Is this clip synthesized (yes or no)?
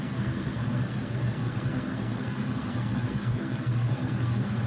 yes